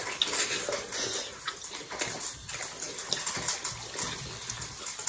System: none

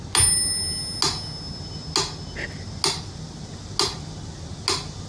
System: none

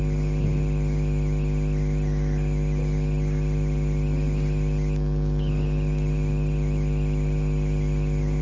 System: none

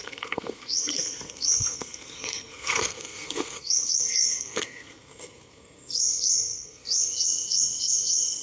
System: codec, SNAC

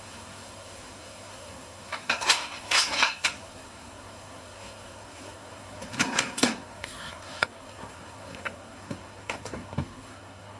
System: codec, SNAC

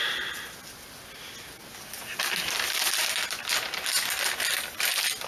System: none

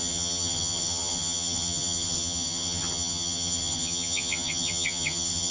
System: vocoder, HiFi-GAN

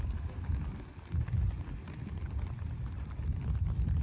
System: none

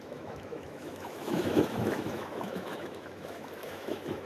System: autoencoder, DAC-VAE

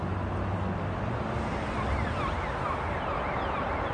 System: none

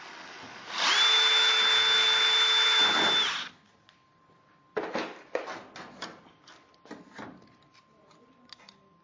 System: none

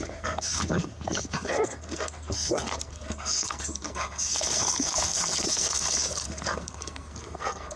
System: codec, SNAC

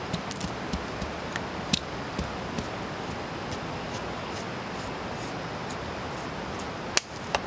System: none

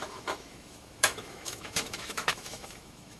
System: autoencoder, DAC-VAE